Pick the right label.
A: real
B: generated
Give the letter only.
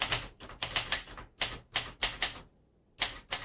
A